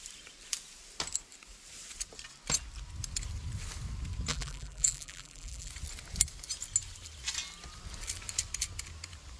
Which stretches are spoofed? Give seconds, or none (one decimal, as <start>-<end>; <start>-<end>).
4.3-5.7